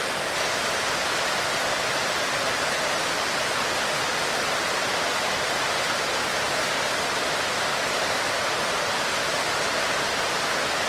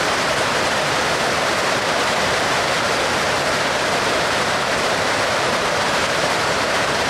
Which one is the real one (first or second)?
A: first